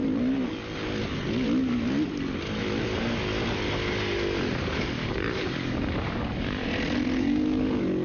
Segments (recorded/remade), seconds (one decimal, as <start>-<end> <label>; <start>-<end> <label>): 0.0-4.6 recorded; 4.6-6.6 remade; 6.6-7.2 recorded; 7.2-8.0 remade